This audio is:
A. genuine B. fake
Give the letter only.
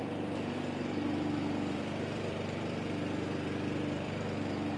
B